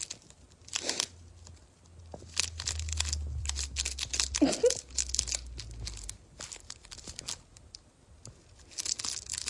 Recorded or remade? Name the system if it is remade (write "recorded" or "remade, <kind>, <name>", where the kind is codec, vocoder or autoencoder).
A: recorded